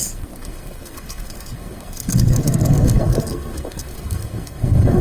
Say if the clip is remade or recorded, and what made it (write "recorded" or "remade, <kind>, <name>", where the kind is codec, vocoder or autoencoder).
remade, codec, SNAC